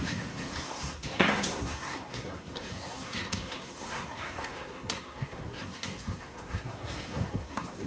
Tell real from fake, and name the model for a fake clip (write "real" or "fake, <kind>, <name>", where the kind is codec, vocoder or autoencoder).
fake, codec, SNAC